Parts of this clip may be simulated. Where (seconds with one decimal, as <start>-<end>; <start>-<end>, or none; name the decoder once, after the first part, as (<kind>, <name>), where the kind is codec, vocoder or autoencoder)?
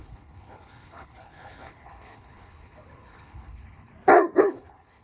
0.0-3.9 (codec, HILCodec); 4.4-5.0